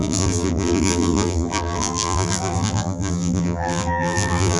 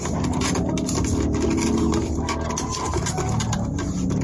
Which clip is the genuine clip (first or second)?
second